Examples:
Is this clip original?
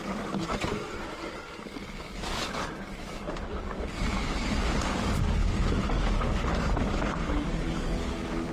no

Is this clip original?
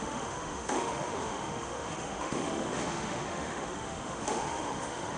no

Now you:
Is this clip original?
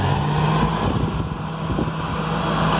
yes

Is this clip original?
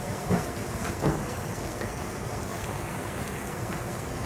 no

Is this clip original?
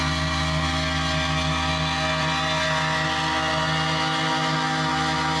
yes